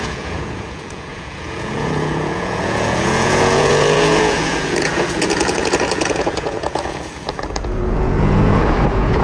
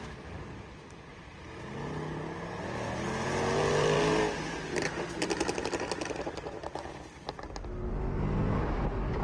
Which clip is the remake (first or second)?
first